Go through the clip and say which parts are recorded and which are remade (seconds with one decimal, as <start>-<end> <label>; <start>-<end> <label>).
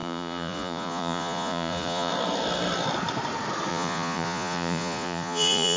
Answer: 0.0-2.1 remade; 2.1-3.7 recorded; 3.7-5.8 remade